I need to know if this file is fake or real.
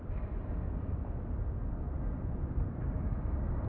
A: fake